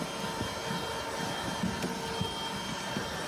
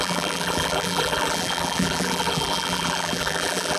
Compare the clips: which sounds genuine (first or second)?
first